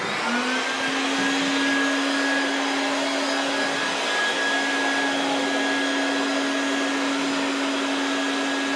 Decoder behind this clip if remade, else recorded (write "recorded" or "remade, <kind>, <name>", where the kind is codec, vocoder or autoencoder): recorded